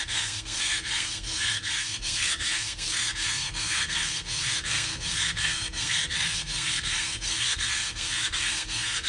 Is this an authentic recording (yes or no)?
no